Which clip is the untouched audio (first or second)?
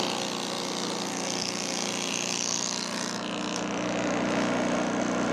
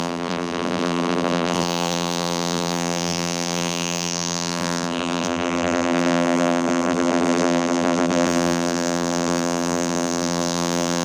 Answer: first